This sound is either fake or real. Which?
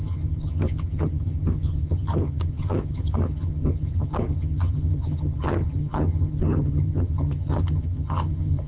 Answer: fake